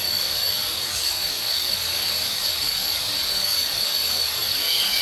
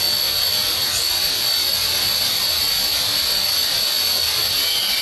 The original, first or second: second